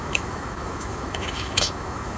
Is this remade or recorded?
remade